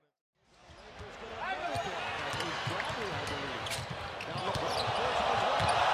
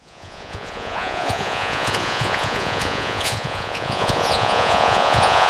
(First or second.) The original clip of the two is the first